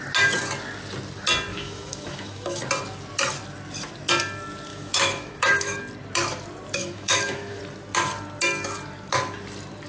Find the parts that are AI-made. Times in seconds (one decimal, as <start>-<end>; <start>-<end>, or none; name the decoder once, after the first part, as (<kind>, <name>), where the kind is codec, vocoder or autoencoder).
1.5-2.6 (autoencoder, DAC-VAE); 4.7-5.8; 6.8-7.6